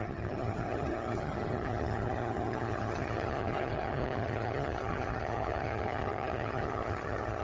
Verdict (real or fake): fake